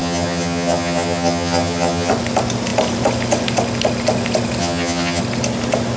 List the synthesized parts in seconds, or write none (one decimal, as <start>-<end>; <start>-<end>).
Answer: 0.0-2.1; 4.6-5.2